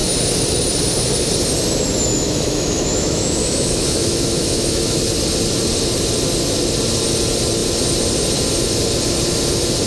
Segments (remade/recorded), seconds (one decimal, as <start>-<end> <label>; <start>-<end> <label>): 0.0-2.1 recorded; 2.1-5.0 remade; 5.0-9.9 recorded